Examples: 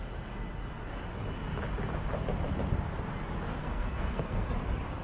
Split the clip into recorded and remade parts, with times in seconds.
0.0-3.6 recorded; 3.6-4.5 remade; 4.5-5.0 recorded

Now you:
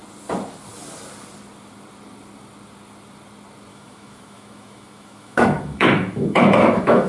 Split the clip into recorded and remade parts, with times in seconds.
0.0-3.7 recorded; 3.7-7.1 remade

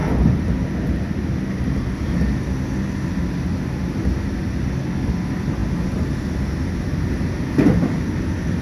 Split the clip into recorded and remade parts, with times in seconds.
0.0-8.6 recorded

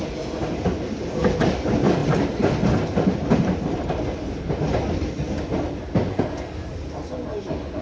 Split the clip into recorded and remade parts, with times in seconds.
0.0-7.8 recorded

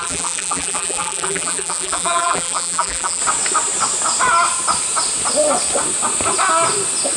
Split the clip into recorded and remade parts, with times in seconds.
0.0-3.2 remade; 3.2-7.2 recorded

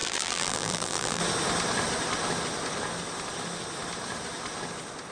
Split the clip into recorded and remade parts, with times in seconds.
0.0-1.2 remade; 1.2-5.1 recorded

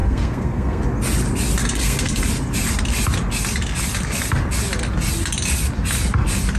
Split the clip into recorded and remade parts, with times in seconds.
0.0-0.8 remade; 0.8-1.6 recorded; 1.6-2.2 remade; 2.2-6.6 recorded

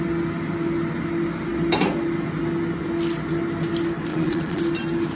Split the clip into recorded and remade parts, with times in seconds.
0.0-4.1 recorded; 4.1-4.6 remade; 4.6-5.2 recorded